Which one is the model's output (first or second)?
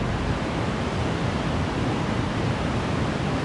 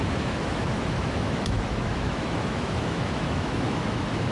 second